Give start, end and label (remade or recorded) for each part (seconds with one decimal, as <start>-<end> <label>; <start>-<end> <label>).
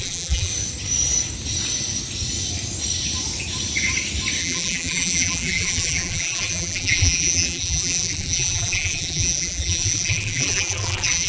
0.0-0.5 remade; 0.5-4.4 recorded; 4.4-11.3 remade